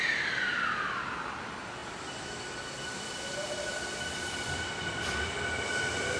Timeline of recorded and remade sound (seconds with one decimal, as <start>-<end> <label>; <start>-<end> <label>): 0.0-6.2 recorded